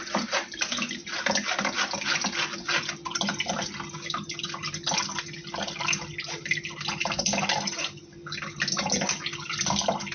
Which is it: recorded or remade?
recorded